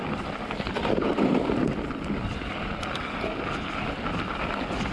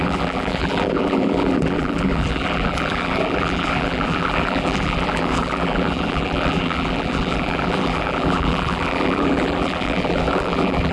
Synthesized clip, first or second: second